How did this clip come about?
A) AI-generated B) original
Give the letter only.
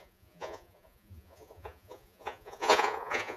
A